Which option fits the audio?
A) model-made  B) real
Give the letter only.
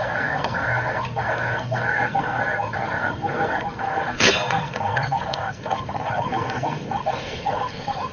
A